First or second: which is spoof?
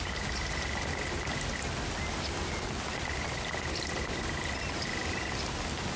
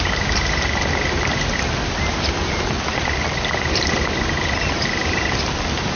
second